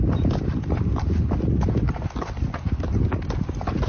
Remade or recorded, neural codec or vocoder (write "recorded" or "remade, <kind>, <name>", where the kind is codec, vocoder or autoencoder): recorded